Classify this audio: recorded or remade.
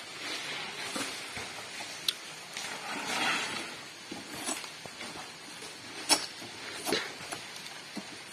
recorded